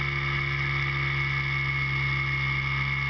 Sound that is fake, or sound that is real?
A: real